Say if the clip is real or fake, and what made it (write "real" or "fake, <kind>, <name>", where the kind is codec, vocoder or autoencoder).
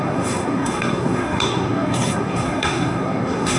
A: fake, codec, SNAC